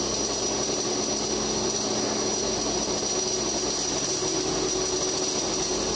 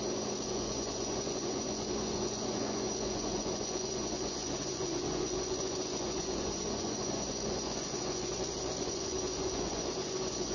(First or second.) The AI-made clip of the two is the second